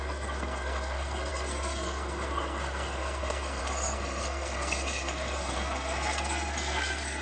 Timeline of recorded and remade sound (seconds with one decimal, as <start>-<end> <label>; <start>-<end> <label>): 0.0-7.2 remade